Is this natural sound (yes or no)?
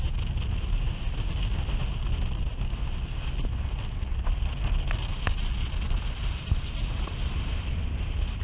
yes